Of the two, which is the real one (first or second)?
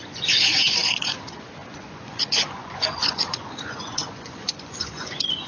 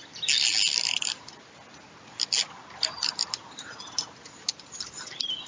second